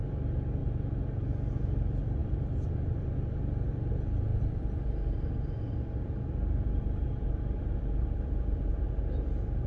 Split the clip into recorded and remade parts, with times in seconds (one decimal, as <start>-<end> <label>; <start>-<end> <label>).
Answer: 0.0-2.2 recorded; 2.2-3.1 remade; 3.1-4.3 recorded; 4.3-8.7 remade; 8.7-9.7 recorded

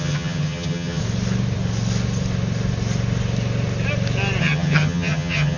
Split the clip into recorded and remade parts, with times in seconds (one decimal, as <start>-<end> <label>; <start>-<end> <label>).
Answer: 0.0-1.0 remade; 1.0-4.4 recorded; 4.4-5.6 remade

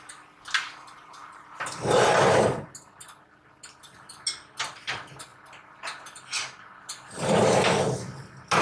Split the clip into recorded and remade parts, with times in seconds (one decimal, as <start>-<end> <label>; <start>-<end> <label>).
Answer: 0.0-8.6 recorded

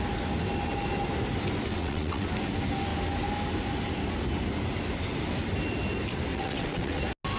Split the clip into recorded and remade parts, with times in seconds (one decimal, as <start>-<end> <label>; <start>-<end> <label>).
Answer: 0.0-1.7 recorded; 1.7-2.3 remade; 2.3-6.3 recorded; 6.3-7.0 remade; 7.0-7.4 recorded

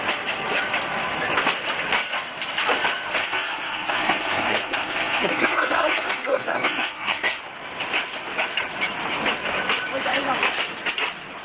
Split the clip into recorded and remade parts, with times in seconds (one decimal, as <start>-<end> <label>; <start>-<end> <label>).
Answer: 0.0-3.2 recorded; 3.2-7.4 remade; 7.4-11.4 recorded

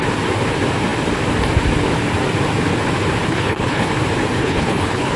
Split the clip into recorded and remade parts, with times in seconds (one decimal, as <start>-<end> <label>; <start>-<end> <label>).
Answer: 0.0-3.3 recorded; 3.3-3.9 remade; 3.9-4.4 recorded; 4.4-5.2 remade

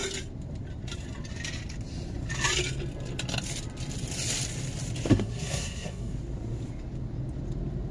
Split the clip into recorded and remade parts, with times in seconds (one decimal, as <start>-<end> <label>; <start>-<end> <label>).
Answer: 0.0-5.1 recorded; 5.1-6.1 remade; 6.1-7.9 recorded

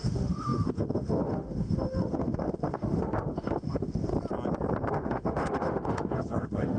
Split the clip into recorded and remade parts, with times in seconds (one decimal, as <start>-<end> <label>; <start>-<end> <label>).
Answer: 0.0-4.1 remade; 4.1-4.9 recorded; 4.9-6.8 remade